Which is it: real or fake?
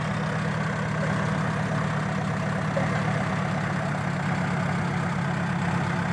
real